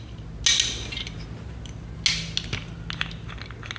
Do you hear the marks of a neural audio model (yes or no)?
no